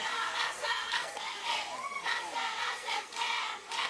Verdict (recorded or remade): remade